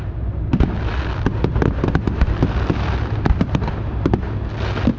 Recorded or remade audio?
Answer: recorded